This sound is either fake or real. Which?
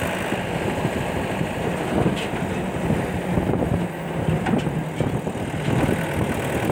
real